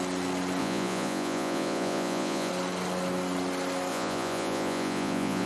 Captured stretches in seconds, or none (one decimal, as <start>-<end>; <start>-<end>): 0.0-0.6; 2.5-3.9